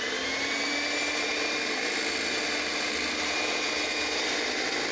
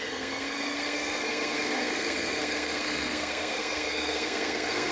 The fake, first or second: second